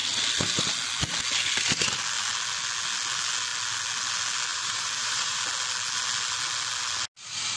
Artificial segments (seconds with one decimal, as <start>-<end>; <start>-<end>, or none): 4.5-5.4